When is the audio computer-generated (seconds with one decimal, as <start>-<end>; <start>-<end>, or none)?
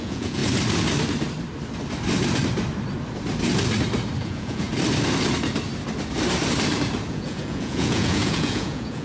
0.0-0.4; 4.2-4.7; 7.1-9.0